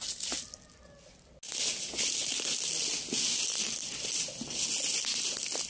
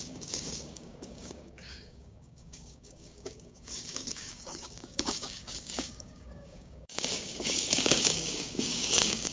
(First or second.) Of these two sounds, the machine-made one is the second